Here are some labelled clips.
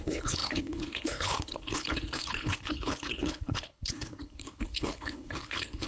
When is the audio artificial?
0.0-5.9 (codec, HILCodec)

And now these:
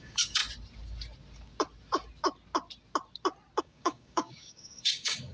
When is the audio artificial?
0.0-0.4 (codec, DAC); 3.6-5.3

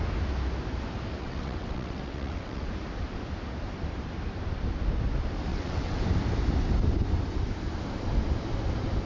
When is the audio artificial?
1.2-2.7 (vocoder, WaveNeXt); 5.5-6.0

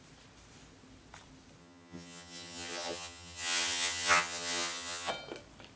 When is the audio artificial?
1.6-5.1 (vocoder, HiFi-GAN)

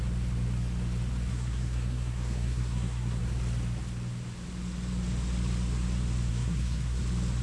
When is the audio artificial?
1.3-3.2 (codec, SNAC); 6.3-7.0

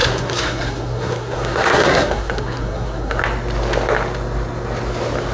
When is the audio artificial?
0.0-3.2 (codec, SNAC)

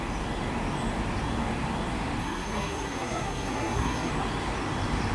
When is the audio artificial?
2.2-4.1 (codec, SNAC)

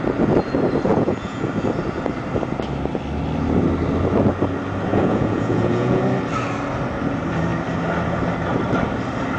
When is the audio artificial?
0.9-1.5 (vocoder, Vocos); 4.9-6.0